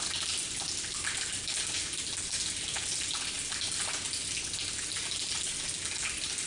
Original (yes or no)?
yes